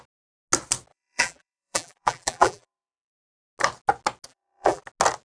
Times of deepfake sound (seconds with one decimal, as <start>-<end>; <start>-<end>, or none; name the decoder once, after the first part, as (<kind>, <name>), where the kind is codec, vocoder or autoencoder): 0.9-3.1 (vocoder, BigVGAN v2); 4.3-4.8